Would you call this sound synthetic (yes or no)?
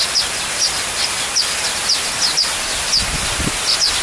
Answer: no